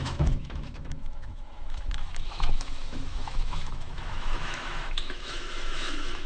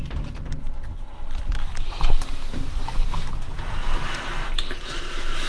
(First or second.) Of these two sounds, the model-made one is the first